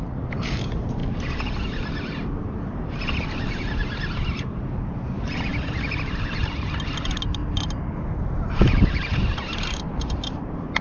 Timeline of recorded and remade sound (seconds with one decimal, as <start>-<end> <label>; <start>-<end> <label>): 0.0-1.0 remade; 1.0-1.6 recorded; 1.6-7.4 remade; 7.4-8.5 recorded; 8.5-10.8 remade